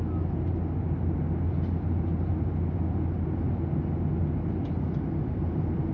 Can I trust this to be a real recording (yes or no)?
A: yes